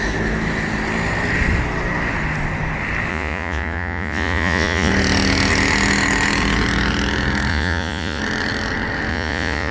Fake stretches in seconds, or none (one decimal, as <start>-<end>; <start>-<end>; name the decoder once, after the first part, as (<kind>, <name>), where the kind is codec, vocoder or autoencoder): 3.1-4.9 (vocoder, Vocos); 7.5-8.2; 9.1-9.7